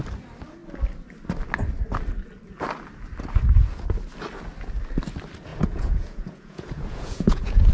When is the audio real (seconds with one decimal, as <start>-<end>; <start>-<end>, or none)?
0.0-5.5